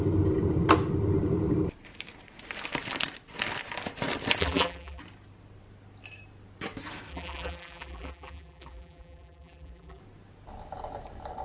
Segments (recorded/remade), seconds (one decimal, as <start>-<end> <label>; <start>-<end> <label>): 0.0-4.4 recorded; 4.4-5.0 remade; 5.0-7.1 recorded; 7.1-10.0 remade; 10.0-11.4 recorded